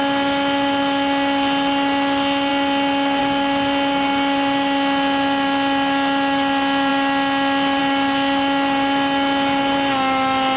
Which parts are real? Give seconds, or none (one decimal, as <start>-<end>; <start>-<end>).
0.0-10.6

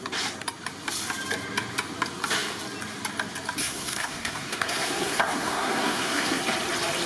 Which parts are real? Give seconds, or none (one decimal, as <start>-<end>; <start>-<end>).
0.0-3.6; 6.4-7.1